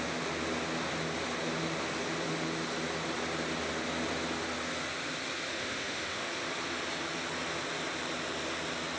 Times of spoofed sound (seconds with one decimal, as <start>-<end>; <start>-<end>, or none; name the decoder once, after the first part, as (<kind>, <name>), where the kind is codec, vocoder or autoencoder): 5.5-6.3 (autoencoder, DAC-VAE)